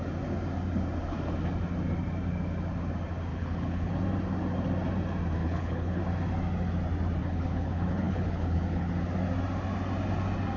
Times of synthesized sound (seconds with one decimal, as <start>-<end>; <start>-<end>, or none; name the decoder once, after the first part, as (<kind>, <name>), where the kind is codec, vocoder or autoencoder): 3.3-3.9 (codec, HILCodec); 5.4-6.0; 7.2-8.9